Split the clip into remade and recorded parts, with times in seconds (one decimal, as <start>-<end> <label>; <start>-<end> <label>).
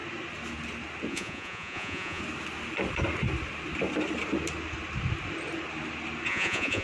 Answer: 0.0-1.1 recorded; 1.1-2.2 remade; 2.2-6.3 recorded; 6.3-6.8 remade